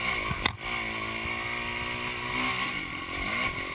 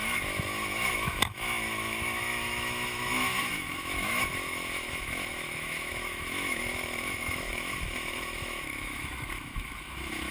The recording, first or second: first